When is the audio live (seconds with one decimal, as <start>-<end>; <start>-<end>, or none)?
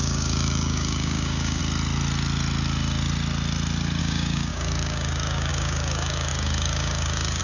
1.6-4.0